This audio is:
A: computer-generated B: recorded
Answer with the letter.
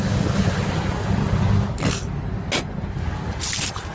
B